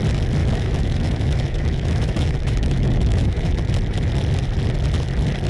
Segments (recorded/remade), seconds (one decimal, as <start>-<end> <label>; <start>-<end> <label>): 0.0-0.4 recorded; 0.4-3.7 remade; 3.7-5.5 recorded